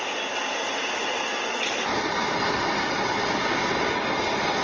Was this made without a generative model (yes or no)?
yes